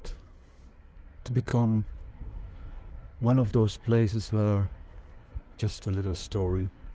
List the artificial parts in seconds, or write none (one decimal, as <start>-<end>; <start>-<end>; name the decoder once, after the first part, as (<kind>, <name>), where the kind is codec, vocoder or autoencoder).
0.0-6.9 (codec, SNAC)